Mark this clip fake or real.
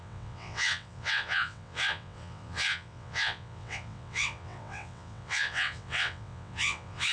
fake